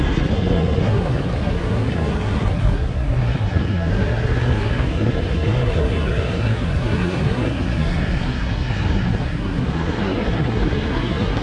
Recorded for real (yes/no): no